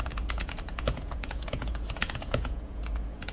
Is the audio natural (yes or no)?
no